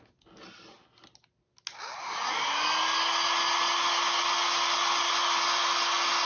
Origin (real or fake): real